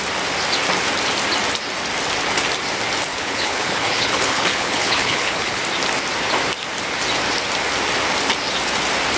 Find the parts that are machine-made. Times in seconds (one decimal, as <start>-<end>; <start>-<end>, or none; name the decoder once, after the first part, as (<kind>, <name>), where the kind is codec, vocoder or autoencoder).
3.1-5.6 (codec, HILCodec)